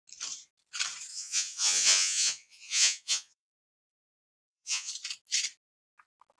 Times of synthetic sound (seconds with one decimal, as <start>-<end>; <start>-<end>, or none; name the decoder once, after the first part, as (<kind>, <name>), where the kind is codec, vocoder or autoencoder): 1.1-4.9 (vocoder, Vocos)